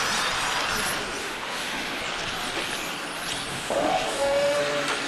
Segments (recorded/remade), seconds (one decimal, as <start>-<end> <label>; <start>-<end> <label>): 0.0-1.2 recorded; 1.2-2.0 remade; 2.0-3.5 recorded; 3.5-4.6 remade; 4.6-5.1 recorded